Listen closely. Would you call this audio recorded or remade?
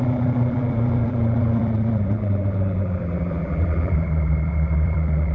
remade